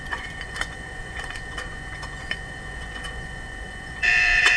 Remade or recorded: remade